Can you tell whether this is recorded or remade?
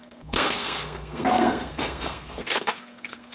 remade